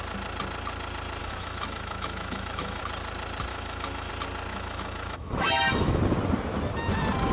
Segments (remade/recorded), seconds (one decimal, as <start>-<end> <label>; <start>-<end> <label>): 0.0-1.2 recorded; 1.2-2.8 remade; 2.8-3.5 recorded; 3.5-4.1 remade; 4.1-4.5 recorded; 4.5-6.0 remade; 6.0-7.3 recorded